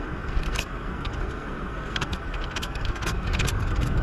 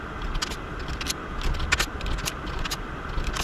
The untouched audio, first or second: second